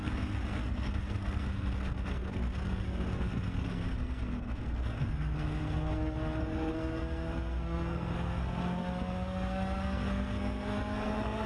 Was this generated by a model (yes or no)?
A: yes